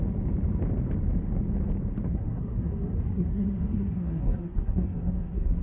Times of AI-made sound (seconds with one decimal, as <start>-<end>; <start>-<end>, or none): 2.1-5.6